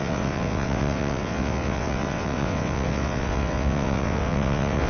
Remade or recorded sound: remade